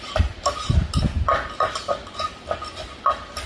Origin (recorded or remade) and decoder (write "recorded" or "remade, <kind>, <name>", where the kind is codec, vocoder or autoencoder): recorded